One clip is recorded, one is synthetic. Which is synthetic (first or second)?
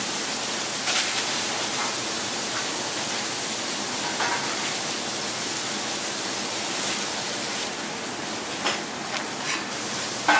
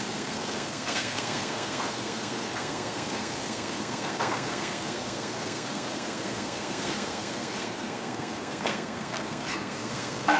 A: second